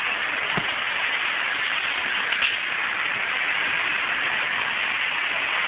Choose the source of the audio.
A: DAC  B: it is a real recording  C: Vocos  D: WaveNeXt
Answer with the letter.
B